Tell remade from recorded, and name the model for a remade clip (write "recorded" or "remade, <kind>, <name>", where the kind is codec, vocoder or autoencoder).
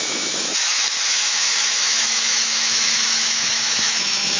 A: remade, autoencoder, DAC-VAE